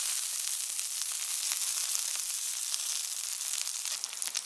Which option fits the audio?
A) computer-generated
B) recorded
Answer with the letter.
B